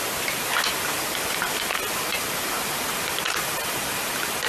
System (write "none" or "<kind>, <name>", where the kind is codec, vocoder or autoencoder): none